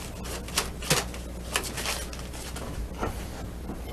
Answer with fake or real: real